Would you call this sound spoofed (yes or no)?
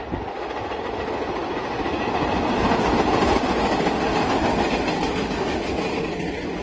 no